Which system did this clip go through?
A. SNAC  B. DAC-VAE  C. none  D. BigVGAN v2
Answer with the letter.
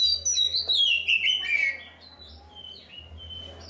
C